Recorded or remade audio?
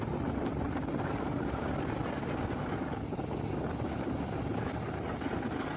recorded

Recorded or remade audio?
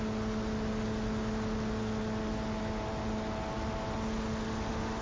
recorded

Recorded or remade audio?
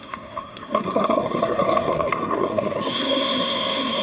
remade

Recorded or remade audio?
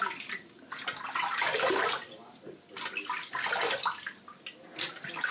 recorded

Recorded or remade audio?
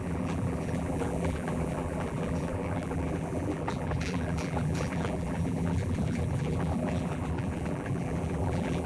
remade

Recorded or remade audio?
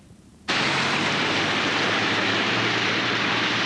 remade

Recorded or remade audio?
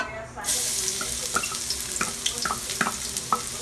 recorded